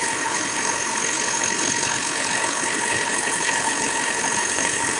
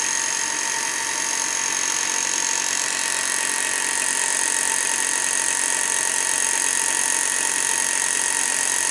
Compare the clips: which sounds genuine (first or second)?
second